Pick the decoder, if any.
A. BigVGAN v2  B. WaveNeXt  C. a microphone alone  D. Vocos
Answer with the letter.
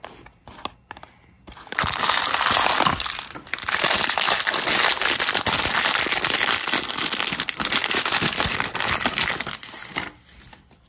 C